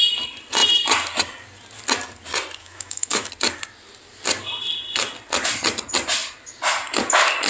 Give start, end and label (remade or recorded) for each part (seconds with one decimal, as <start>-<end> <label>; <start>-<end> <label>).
0.0-2.6 recorded; 2.6-3.3 remade; 3.3-7.5 recorded